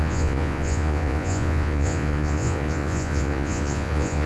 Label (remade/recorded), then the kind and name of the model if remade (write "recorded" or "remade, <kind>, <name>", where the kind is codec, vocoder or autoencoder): remade, vocoder, Vocos